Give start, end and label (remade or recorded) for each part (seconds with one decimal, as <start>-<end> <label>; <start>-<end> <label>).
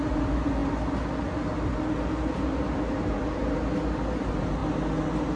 0.0-5.4 recorded